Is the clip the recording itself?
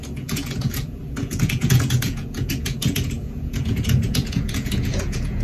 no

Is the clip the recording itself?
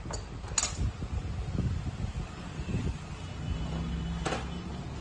yes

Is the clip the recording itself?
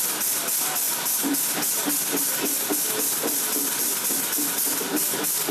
yes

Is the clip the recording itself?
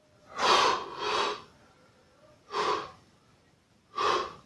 yes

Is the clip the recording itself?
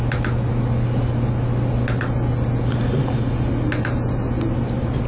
yes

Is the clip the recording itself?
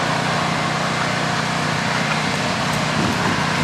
yes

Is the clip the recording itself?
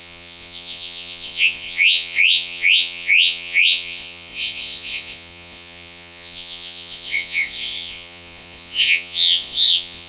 no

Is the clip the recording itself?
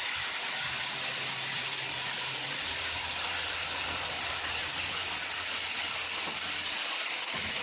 no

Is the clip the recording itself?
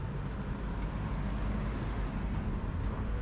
yes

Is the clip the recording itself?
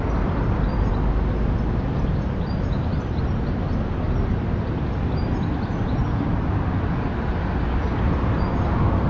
yes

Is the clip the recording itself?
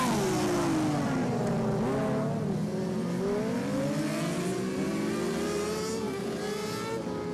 yes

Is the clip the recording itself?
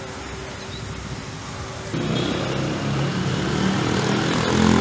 yes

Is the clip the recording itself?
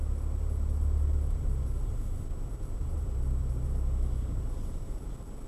yes